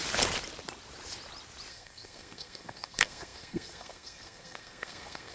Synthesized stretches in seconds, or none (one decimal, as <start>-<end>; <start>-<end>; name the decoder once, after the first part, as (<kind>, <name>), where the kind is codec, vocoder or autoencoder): 1.7-5.3 (codec, SNAC)